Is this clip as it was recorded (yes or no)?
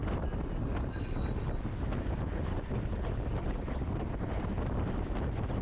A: yes